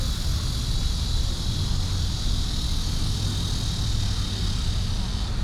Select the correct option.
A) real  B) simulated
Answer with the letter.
A